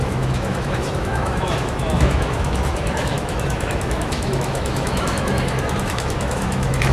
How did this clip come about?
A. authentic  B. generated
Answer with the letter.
B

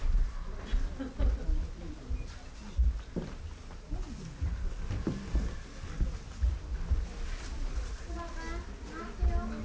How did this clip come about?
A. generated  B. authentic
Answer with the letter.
B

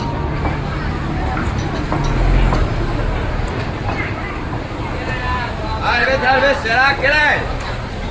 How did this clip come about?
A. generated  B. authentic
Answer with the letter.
B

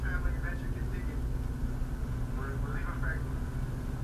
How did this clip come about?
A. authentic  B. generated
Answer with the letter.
A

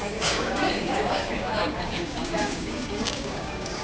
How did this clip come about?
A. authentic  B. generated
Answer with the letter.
B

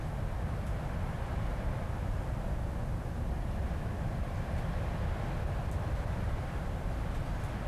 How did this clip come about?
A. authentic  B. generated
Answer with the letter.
A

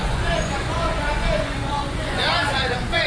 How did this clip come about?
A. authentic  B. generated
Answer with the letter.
B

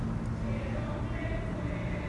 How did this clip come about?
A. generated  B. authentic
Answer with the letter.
B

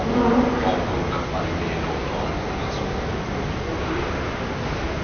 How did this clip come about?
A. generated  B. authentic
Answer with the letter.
B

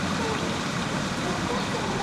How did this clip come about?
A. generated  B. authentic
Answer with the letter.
A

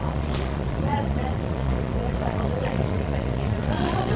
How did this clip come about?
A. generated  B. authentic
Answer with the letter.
A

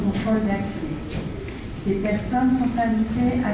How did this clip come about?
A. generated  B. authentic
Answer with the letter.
B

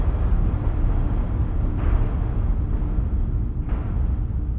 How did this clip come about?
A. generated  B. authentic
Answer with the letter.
B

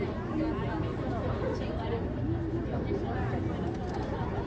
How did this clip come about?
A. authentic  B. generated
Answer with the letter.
A